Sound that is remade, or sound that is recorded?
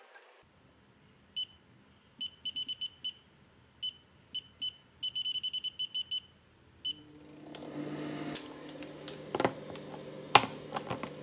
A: recorded